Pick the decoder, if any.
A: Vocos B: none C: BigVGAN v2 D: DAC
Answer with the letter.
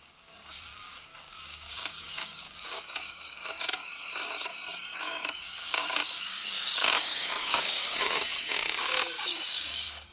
D